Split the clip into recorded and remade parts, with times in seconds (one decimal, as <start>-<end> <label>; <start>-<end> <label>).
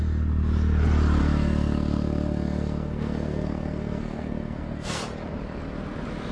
0.0-1.2 recorded; 1.2-5.0 remade; 5.0-6.3 recorded